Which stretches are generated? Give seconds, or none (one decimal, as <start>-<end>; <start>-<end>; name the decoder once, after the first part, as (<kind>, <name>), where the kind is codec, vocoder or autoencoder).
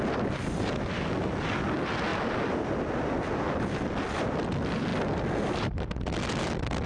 none